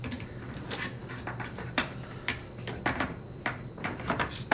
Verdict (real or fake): fake